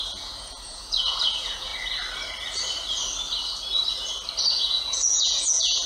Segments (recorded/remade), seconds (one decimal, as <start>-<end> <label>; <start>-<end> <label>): 0.0-1.7 remade; 1.7-4.4 recorded; 4.4-5.9 remade